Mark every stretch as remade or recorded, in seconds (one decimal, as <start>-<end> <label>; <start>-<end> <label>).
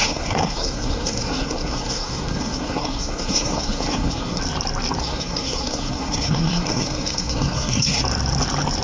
0.0-4.4 remade; 4.4-5.0 recorded; 5.0-8.0 remade; 8.0-8.8 recorded